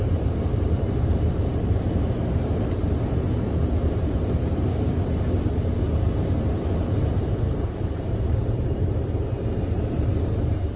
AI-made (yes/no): yes